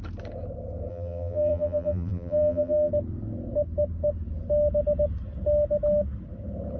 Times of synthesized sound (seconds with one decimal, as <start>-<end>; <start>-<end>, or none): 0.9-2.9